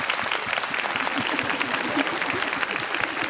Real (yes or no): yes